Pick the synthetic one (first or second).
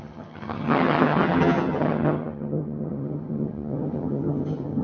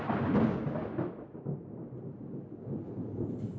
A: first